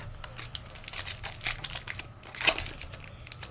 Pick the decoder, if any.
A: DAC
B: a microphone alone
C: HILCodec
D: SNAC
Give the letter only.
B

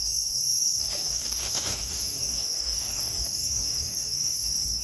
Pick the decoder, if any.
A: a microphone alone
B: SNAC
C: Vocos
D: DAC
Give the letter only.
D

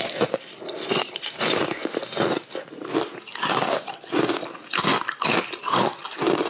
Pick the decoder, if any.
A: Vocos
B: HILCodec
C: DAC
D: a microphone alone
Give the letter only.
D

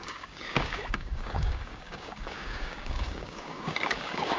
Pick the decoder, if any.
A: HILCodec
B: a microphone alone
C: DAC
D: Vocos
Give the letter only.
C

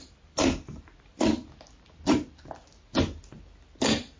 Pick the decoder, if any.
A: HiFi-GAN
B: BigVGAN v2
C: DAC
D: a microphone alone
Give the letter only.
D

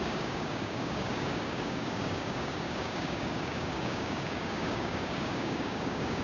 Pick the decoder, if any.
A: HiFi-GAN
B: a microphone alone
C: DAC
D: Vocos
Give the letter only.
C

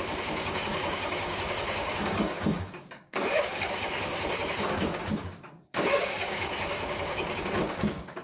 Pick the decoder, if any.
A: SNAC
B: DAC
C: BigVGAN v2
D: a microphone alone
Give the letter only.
B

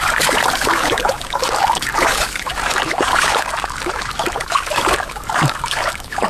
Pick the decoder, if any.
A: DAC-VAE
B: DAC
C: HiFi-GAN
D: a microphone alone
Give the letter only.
B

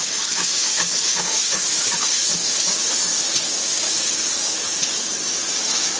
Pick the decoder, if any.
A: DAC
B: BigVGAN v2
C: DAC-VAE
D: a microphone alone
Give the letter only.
A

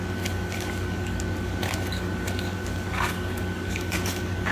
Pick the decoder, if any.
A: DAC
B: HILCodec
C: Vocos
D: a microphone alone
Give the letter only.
A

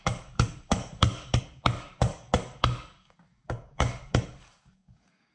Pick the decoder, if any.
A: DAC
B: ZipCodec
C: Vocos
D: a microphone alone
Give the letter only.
A